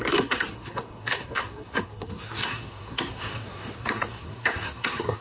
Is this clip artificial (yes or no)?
yes